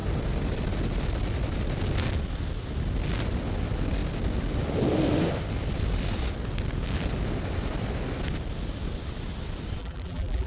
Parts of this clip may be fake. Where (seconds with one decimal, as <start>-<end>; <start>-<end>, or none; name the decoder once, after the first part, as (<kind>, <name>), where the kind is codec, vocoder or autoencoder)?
9.8-10.5 (vocoder, BigVGAN v2)